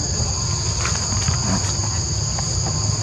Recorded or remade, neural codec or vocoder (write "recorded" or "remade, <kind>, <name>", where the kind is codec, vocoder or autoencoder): recorded